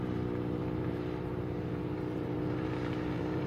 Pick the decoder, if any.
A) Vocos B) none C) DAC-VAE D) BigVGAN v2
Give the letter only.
D